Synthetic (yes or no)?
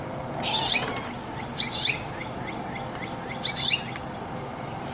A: no